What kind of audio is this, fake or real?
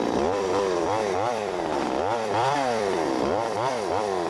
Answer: fake